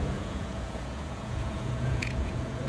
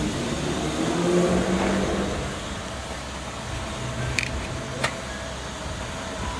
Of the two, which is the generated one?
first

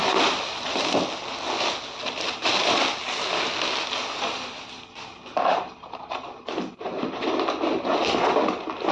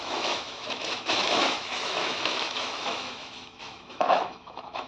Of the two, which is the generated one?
second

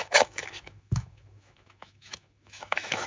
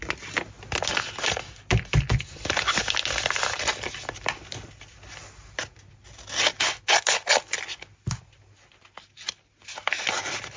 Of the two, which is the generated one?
first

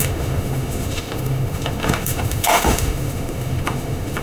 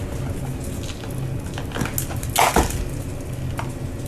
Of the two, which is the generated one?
first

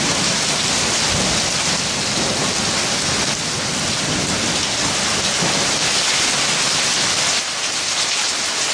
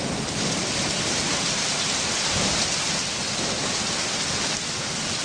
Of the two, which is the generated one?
second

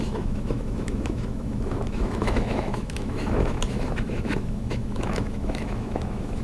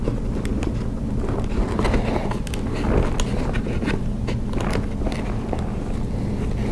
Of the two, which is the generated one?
first